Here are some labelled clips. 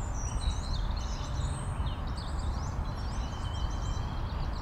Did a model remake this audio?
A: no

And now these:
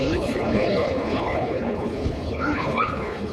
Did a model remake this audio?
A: yes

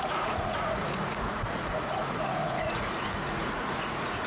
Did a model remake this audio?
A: yes